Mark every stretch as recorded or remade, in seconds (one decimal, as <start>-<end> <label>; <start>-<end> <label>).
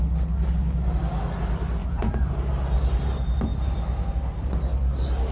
0.0-1.8 recorded; 1.8-2.3 remade; 2.3-5.3 recorded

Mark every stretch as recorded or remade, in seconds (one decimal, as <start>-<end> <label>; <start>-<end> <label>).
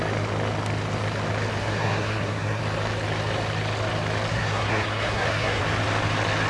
0.0-1.6 recorded; 1.6-2.6 remade; 2.6-4.3 recorded; 4.3-5.6 remade; 5.6-6.5 recorded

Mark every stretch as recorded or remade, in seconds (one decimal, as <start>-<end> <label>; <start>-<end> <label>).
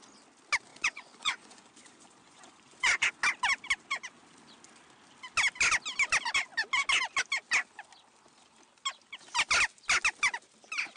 0.0-0.7 recorded; 0.7-3.1 remade; 3.1-11.0 recorded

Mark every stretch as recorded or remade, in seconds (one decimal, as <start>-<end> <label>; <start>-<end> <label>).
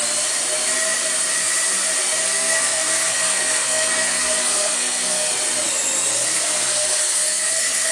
0.0-2.2 recorded; 2.2-5.3 remade; 5.3-6.1 recorded; 6.1-7.9 remade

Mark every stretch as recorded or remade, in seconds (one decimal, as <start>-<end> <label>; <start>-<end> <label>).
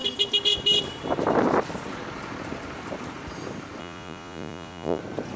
0.0-3.8 recorded; 3.8-5.0 remade; 5.0-5.4 recorded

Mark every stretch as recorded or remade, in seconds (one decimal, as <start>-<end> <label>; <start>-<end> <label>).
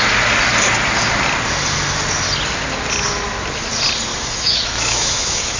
0.0-4.1 recorded; 4.1-5.6 remade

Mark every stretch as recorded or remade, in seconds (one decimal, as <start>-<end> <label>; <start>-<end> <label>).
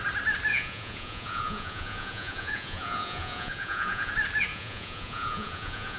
0.0-0.5 recorded; 0.5-4.1 remade; 4.1-4.5 recorded; 4.5-6.0 remade